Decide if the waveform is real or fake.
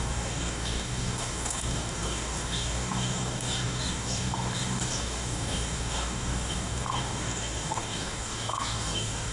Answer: fake